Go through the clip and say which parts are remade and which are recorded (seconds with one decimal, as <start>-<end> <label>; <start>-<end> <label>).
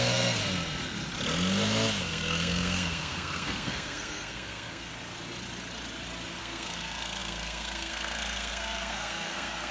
0.0-0.4 remade; 0.4-2.0 recorded; 2.0-4.9 remade; 4.9-6.4 recorded; 6.4-9.7 remade